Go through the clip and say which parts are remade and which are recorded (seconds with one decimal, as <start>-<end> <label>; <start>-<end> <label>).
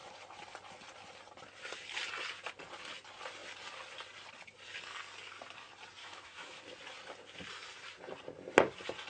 0.0-6.0 recorded; 6.0-6.6 remade; 6.6-9.1 recorded